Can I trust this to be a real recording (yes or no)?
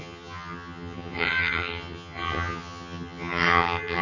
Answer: no